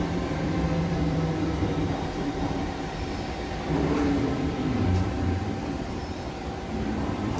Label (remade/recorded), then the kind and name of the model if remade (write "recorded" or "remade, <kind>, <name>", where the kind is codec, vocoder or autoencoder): remade, vocoder, BigVGAN v2